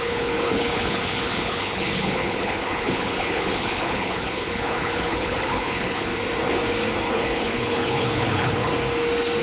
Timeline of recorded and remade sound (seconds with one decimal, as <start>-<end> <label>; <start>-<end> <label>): 0.0-6.1 remade; 6.1-7.1 recorded; 7.1-8.7 remade; 8.7-9.4 recorded